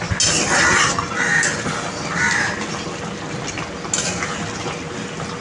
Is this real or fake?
real